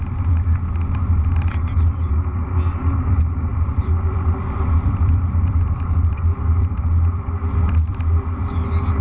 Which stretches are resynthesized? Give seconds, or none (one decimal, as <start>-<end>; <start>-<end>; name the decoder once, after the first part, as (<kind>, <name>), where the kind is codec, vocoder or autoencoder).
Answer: 3.5-8.4 (vocoder, BigVGAN v2)

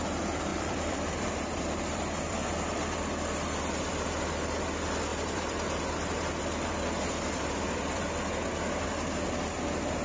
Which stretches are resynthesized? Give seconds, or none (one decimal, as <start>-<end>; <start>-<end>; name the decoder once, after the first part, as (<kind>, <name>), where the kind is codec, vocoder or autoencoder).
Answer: 0.5-4.1 (vocoder, BigVGAN v2); 5.1-8.3